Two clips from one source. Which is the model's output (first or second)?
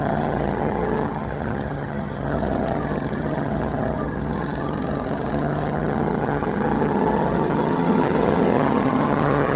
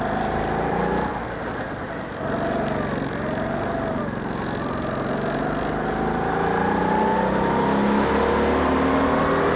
first